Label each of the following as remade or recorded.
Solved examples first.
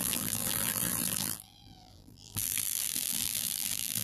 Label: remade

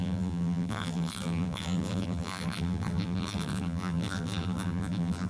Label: remade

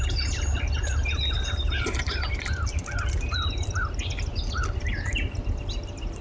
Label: recorded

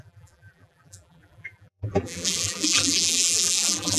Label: remade